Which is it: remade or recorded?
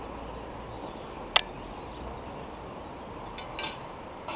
recorded